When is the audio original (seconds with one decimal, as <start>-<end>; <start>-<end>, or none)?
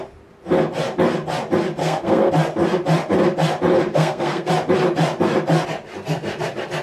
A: 0.0-1.8; 2.3-3.9; 4.5-6.8